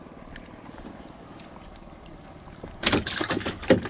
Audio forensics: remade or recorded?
recorded